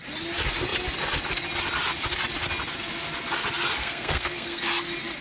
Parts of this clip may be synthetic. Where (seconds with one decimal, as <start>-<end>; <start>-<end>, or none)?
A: 3.8-4.6